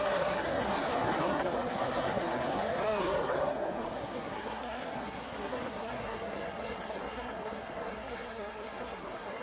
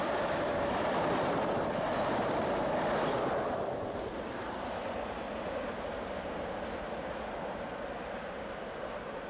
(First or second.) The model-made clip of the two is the first